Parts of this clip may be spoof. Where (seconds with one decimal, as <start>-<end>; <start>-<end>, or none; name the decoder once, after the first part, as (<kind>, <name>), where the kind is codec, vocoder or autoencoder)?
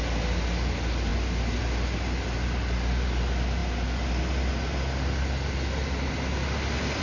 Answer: none